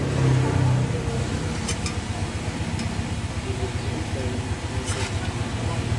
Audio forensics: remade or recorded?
recorded